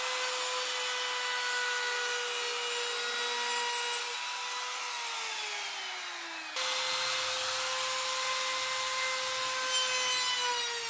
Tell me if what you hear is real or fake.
real